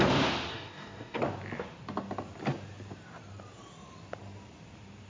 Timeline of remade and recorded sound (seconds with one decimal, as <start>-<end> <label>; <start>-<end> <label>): 0.0-0.5 recorded; 0.5-1.2 remade; 1.2-5.1 recorded